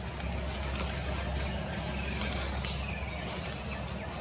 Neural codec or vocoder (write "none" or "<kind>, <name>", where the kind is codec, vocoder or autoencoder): none